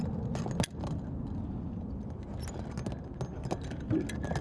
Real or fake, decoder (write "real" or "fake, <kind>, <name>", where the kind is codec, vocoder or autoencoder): real